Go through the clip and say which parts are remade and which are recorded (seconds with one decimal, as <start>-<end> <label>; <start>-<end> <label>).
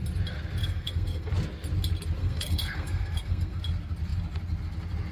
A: 0.0-0.6 recorded; 0.6-1.3 remade; 1.3-2.2 recorded; 2.2-3.6 remade; 3.6-5.1 recorded